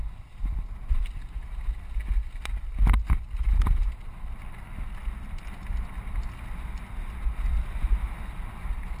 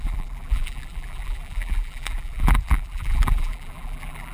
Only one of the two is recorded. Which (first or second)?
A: first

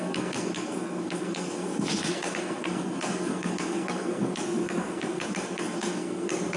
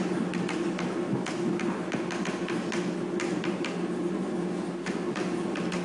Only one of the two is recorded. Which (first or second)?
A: second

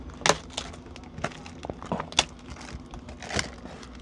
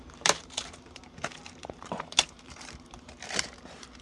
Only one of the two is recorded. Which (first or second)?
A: first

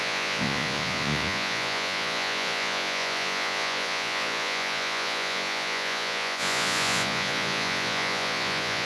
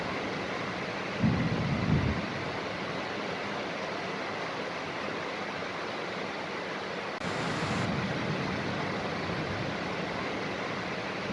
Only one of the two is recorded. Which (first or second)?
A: second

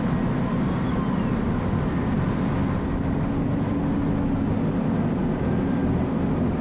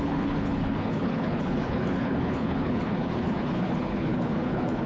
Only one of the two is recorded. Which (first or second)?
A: first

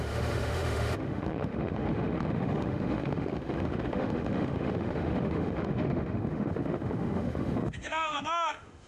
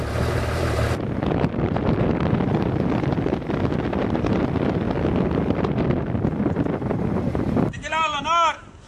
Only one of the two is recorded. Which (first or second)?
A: second